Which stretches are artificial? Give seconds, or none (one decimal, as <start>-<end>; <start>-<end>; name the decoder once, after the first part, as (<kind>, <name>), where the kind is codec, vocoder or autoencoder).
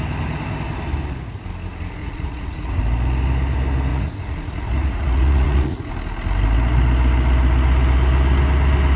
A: 2.0-2.8 (vocoder, Vocos); 3.9-5.9